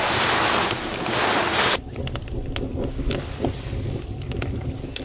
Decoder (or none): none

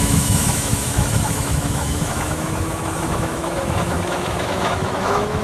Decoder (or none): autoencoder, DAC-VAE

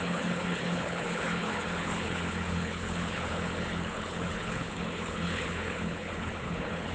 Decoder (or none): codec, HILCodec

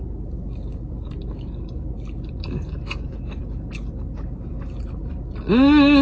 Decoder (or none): none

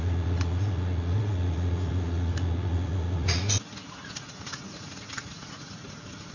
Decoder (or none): vocoder, Vocos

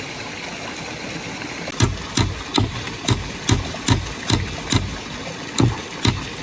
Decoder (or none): none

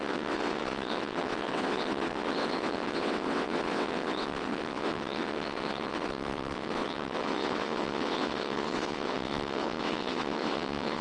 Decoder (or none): vocoder, WaveNeXt